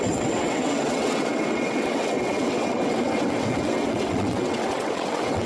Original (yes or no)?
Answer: no